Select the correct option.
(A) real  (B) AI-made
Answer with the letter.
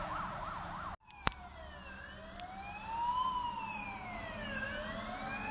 A